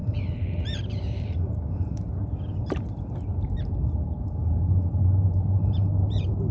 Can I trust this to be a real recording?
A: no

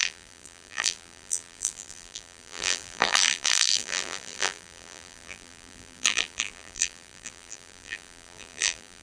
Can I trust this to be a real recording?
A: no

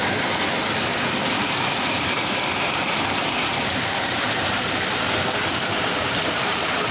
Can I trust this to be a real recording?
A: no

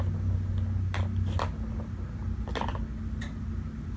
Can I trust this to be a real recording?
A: yes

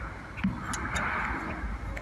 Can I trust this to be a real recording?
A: yes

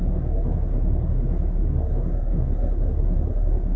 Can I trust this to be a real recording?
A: no